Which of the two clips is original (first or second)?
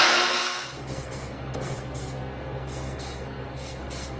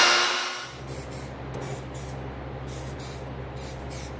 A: second